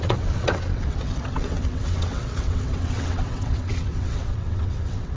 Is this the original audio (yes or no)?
no